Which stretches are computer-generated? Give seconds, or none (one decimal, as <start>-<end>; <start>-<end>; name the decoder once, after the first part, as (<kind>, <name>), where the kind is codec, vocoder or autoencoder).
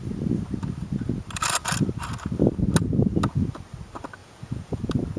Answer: 4.2-4.8 (vocoder, Vocos)